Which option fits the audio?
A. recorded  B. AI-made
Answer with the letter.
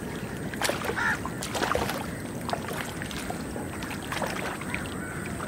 A